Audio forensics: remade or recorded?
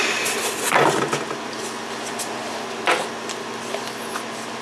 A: recorded